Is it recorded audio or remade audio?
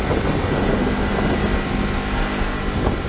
recorded